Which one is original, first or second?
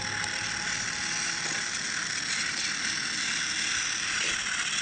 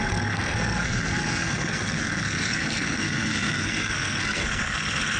first